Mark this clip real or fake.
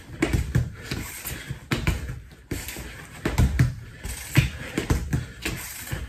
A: real